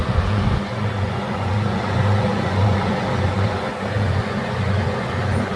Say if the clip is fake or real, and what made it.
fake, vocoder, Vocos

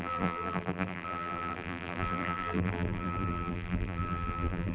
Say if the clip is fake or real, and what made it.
fake, vocoder, BigVGAN v2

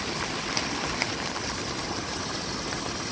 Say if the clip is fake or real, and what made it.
real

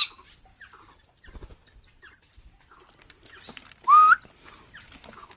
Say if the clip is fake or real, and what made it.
real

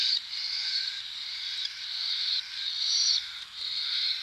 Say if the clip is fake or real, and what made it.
real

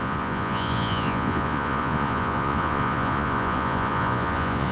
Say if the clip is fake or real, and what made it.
fake, vocoder, Vocos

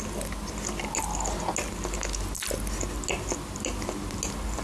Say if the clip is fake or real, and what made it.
real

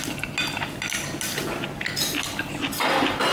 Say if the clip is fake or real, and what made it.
real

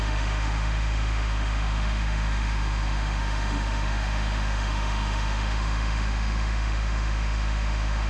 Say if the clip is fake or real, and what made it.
fake, autoencoder, DAC-VAE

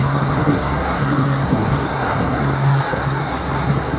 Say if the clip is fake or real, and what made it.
fake, codec, SNAC